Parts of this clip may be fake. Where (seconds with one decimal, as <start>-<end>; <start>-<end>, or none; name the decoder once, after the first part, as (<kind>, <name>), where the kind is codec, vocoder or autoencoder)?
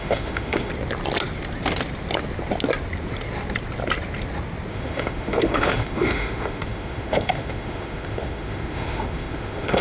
0.0-0.7 (autoencoder, DAC-VAE); 4.7-9.8